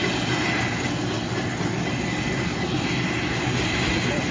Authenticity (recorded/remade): recorded